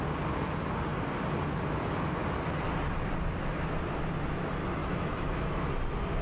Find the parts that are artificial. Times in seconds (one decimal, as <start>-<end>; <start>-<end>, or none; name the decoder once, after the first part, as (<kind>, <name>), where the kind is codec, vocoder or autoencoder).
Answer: 4.8-5.7 (autoencoder, DAC-VAE)